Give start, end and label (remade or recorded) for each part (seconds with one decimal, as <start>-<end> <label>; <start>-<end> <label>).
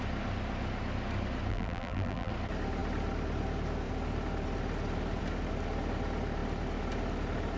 0.0-1.5 recorded; 1.5-2.3 remade; 2.3-7.6 recorded